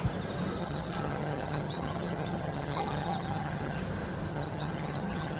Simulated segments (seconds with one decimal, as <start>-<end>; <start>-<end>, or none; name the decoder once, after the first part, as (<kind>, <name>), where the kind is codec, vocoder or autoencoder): 0.6-3.8 (vocoder, HiFi-GAN); 4.3-5.4